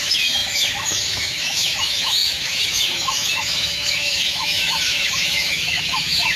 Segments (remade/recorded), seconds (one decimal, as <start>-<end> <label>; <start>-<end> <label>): 0.0-6.4 remade